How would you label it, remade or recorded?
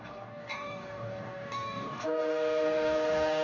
remade